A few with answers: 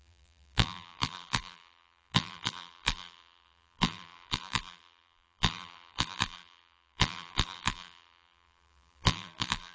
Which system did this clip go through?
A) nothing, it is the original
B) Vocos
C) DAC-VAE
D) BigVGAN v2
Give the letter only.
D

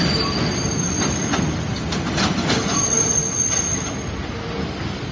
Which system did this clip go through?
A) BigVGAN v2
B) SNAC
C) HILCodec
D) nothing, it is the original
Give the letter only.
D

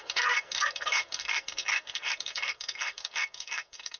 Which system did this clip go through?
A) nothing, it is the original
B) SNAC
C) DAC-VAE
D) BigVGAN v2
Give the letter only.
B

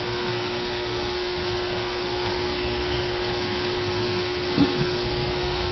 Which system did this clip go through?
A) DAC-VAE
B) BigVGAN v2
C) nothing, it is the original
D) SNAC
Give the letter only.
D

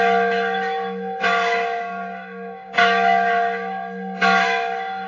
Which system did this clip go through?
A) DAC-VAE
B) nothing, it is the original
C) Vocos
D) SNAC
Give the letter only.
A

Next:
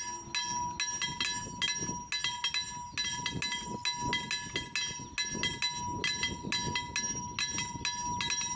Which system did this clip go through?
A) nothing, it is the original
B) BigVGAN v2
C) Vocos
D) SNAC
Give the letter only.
A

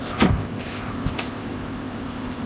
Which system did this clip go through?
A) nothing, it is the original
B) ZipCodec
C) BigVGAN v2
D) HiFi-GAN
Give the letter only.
B